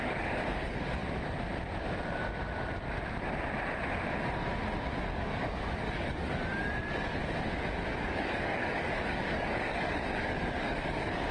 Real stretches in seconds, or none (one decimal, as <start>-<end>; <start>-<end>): 1.0-5.1; 7.2-7.9